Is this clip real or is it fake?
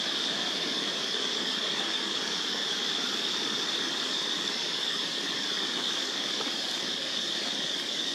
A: fake